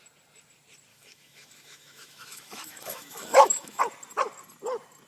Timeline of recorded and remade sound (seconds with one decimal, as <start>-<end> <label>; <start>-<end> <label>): 0.0-0.9 recorded; 0.9-3.8 remade; 3.8-5.1 recorded